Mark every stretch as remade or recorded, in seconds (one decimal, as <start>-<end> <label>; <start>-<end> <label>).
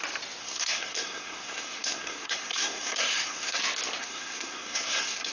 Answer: 0.0-0.4 recorded; 0.4-3.6 remade; 3.6-4.0 recorded; 4.0-5.3 remade